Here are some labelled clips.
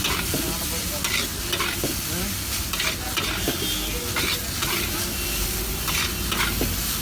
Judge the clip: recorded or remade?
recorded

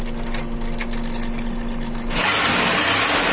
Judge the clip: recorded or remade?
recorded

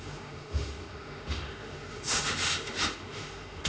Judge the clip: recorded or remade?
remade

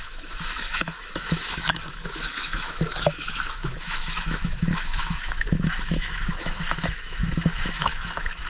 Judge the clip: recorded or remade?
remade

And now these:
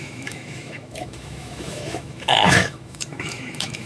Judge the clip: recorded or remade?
remade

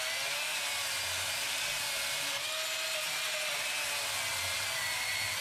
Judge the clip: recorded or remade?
recorded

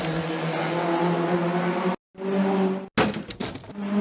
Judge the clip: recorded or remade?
recorded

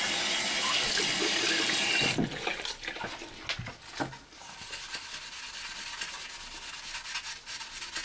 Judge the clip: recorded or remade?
recorded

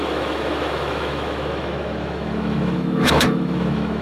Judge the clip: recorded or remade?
remade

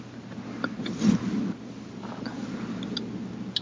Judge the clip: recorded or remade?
recorded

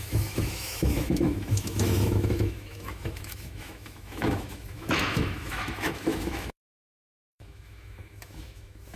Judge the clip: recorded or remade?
remade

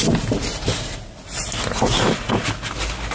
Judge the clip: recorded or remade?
recorded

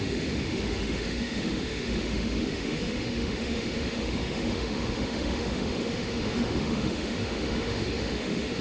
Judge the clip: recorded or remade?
remade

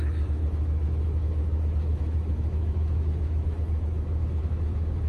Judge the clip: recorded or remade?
remade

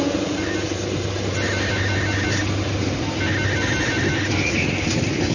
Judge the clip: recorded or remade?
recorded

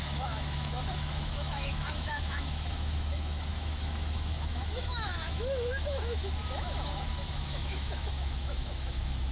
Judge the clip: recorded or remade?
remade